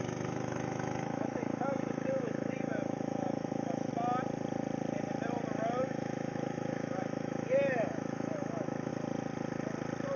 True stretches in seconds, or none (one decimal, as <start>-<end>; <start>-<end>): 3.9-5.8; 8.9-10.2